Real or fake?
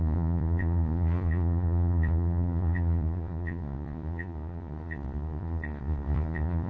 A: fake